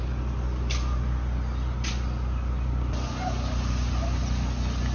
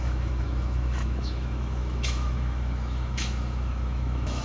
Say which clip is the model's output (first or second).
second